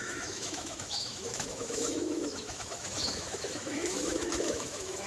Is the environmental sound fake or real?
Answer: fake